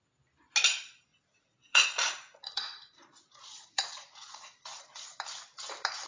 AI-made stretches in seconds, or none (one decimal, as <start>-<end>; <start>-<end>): 1.1-4.8